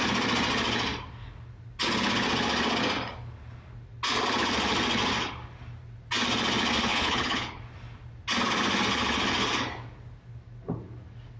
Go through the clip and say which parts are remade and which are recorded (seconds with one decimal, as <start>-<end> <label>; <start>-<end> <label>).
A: 0.0-6.9 recorded; 6.9-7.6 remade; 7.6-11.4 recorded